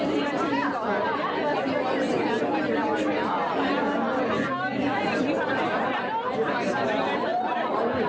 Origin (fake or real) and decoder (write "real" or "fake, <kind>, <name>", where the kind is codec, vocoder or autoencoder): real